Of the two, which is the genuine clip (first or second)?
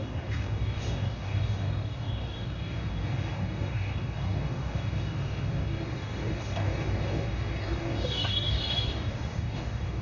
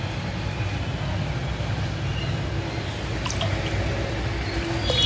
second